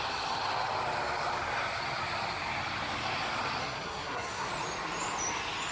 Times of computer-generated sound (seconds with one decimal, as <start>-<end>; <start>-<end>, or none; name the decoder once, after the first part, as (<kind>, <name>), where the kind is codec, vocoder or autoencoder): 3.6-4.5 (codec, SNAC)